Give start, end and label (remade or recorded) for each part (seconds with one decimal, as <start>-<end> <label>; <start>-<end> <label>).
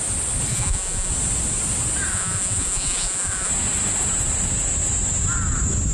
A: 0.0-0.5 recorded; 0.5-1.1 remade; 1.1-2.1 recorded; 2.1-3.5 remade; 3.5-5.9 recorded